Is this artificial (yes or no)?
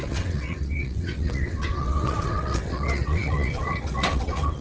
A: yes